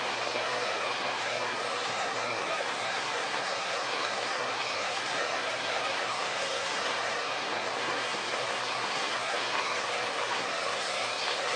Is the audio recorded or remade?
remade